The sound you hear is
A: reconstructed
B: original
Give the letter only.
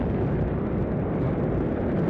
A